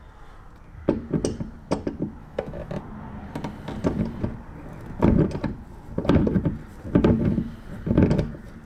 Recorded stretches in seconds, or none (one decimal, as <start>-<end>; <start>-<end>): 0.0-2.2; 2.8-8.7